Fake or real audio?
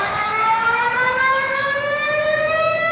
fake